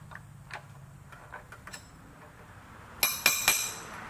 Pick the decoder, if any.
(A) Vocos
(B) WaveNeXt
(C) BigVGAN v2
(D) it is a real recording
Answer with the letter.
D